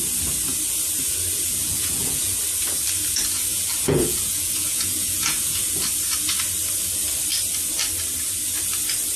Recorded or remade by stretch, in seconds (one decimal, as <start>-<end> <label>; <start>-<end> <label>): 0.0-1.6 recorded; 1.6-2.4 remade; 2.4-3.5 recorded; 3.5-5.6 remade; 5.6-9.2 recorded